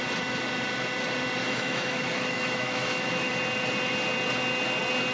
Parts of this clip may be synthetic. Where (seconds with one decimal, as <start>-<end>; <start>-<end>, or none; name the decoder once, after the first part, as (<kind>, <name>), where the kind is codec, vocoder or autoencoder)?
1.4-3.3 (autoencoder, DAC-VAE)